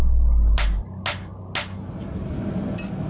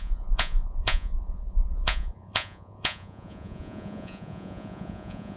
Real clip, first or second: first